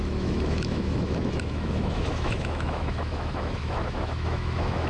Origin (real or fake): fake